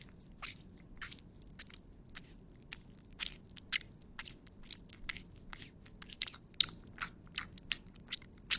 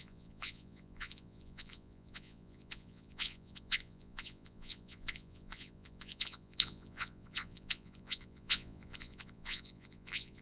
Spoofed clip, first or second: second